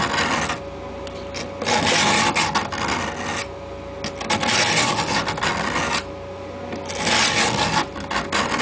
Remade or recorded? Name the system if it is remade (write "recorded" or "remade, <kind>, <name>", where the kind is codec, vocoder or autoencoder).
recorded